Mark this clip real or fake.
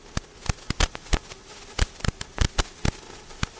real